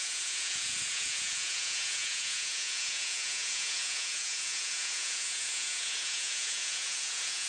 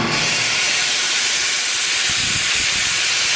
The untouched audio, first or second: second